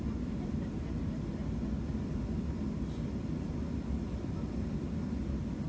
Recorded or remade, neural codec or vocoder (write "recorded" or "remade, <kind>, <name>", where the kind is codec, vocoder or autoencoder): recorded